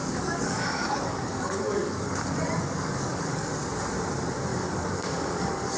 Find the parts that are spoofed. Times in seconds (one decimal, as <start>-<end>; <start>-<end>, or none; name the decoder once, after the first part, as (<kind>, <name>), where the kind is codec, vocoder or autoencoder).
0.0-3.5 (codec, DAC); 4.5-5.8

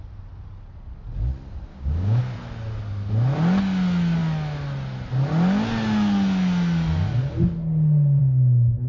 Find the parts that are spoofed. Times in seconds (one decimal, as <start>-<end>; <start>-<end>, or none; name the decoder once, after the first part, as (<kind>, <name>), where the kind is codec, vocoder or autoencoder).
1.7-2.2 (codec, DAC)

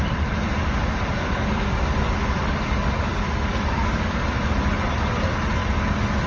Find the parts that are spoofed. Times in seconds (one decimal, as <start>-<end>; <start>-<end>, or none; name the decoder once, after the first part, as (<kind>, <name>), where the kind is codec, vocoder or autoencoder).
0.6-4.1 (codec, DAC); 5.6-6.3

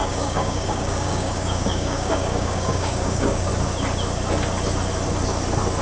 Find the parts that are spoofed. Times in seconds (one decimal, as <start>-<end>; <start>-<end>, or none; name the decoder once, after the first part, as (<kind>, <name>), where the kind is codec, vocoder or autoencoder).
0.0-3.5 (codec, DAC)

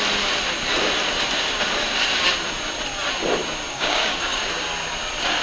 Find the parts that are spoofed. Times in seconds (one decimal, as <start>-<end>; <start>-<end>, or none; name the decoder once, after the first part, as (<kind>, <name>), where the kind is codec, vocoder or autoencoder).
3.7-4.4 (codec, DAC)